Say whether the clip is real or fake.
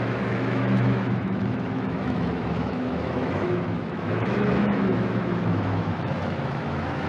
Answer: fake